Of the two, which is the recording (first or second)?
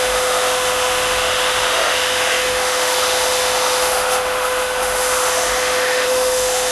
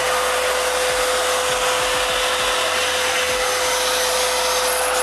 second